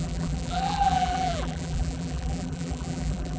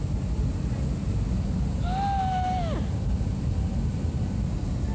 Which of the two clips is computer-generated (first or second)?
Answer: first